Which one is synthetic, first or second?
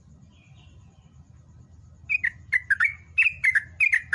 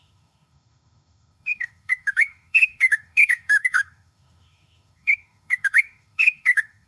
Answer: second